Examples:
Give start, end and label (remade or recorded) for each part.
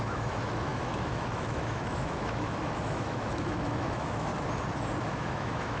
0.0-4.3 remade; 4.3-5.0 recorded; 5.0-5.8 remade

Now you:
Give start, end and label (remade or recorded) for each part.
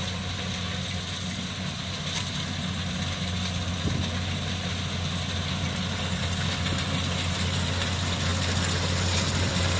0.0-9.8 recorded